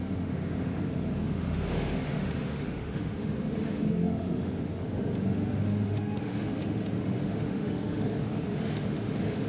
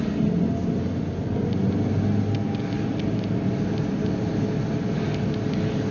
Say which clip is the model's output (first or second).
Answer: first